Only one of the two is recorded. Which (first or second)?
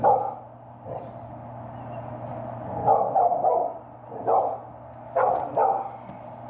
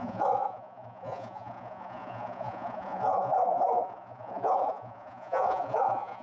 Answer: first